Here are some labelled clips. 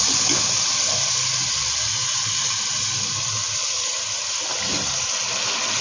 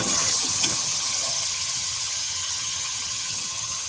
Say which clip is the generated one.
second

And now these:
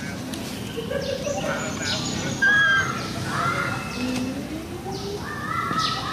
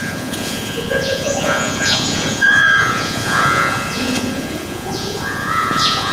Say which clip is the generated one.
second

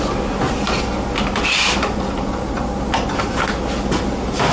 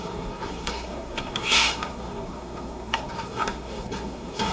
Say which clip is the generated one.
second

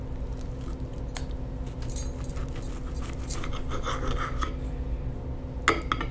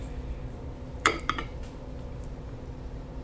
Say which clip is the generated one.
second